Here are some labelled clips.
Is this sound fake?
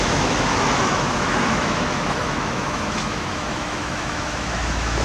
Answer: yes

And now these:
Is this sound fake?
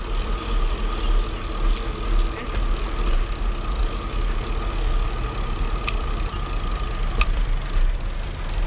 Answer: no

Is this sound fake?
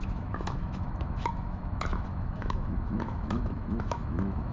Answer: yes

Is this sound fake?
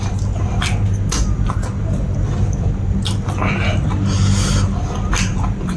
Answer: no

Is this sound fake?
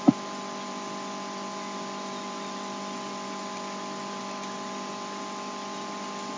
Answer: no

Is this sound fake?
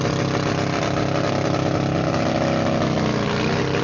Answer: no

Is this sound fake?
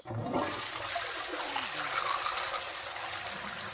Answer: no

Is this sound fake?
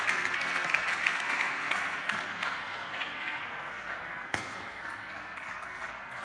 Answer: yes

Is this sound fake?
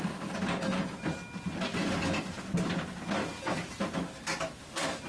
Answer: no